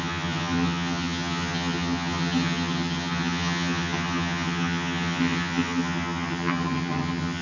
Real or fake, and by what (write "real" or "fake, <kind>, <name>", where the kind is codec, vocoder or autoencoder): fake, vocoder, HiFi-GAN